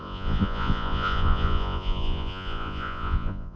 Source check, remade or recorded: remade